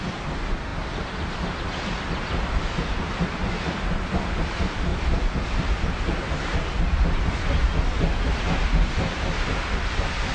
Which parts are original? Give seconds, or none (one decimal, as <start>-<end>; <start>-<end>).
0.0-10.3